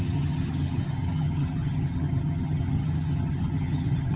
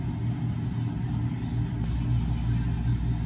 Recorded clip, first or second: second